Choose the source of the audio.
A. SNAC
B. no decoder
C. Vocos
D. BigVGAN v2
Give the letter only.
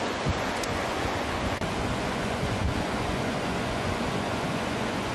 C